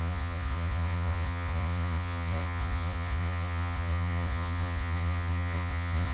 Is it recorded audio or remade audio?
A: remade